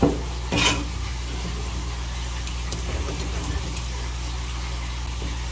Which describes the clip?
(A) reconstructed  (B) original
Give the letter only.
B